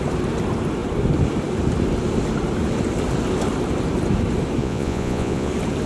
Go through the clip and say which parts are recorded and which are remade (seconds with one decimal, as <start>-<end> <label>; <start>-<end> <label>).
0.0-4.6 recorded; 4.6-5.5 remade; 5.5-5.9 recorded